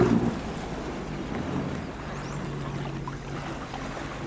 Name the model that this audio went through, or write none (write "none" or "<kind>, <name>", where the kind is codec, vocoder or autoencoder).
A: none